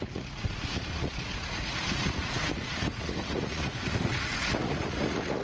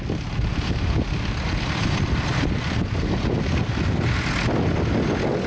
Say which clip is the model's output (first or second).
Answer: first